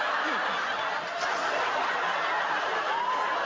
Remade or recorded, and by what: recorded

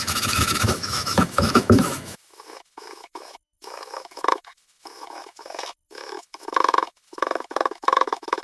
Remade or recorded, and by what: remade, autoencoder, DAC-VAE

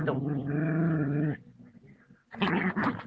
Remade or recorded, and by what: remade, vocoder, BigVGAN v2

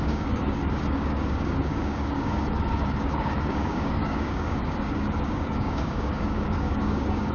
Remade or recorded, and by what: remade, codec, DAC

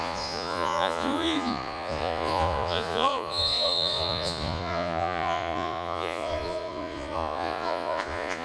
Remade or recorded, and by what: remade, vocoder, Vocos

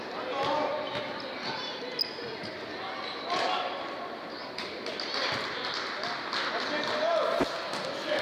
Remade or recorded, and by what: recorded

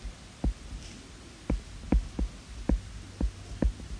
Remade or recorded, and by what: recorded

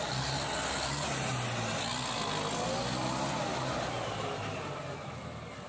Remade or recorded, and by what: recorded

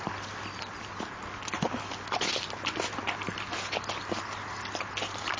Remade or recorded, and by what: recorded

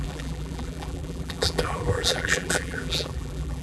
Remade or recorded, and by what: remade, vocoder, BigVGAN v2